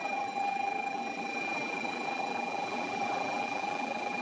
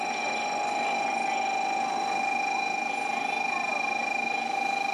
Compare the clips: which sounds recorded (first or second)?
second